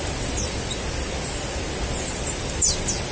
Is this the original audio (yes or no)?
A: yes